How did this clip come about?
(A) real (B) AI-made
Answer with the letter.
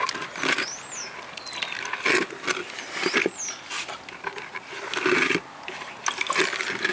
A